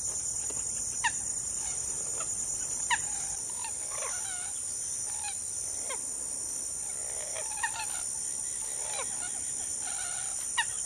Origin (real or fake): real